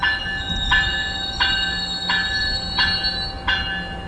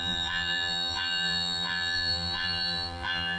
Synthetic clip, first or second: second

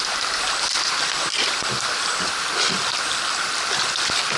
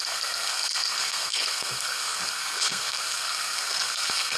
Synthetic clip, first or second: second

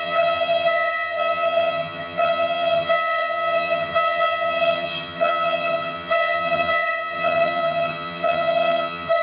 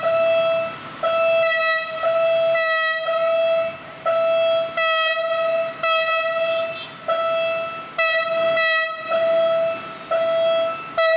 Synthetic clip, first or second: first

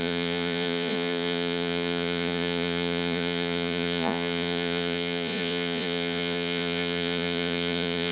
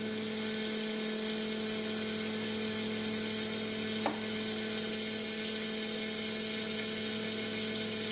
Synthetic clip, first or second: first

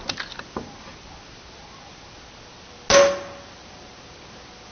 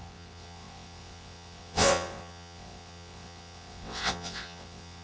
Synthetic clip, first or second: second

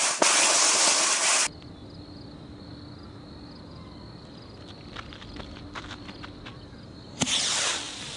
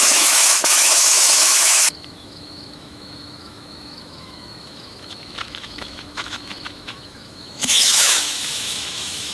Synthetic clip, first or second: second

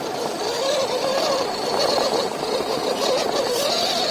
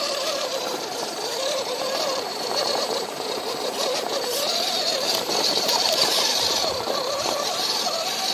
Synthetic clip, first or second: second